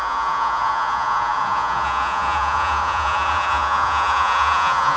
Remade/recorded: remade